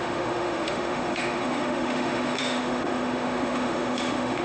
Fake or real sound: fake